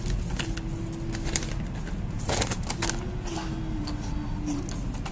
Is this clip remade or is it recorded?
recorded